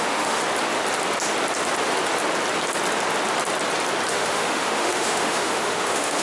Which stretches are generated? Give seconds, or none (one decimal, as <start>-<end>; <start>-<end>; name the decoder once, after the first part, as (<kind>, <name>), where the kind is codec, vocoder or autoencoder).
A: 0.0-0.4 (autoencoder, DAC-VAE); 4.1-6.2